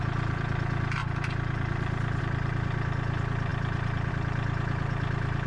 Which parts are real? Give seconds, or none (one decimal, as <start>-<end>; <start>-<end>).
none